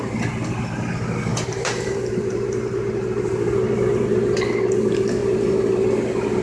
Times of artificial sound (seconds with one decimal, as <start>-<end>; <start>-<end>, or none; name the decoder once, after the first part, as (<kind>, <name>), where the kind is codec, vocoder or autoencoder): 1.3-4.2 (vocoder, BigVGAN v2)